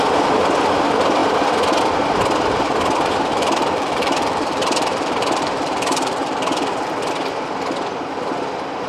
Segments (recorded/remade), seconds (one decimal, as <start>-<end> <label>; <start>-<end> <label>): 0.0-3.3 recorded; 3.3-7.1 remade; 7.1-8.9 recorded